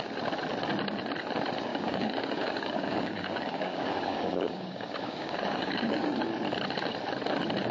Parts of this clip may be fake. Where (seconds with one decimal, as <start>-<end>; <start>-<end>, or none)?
1.7-6.2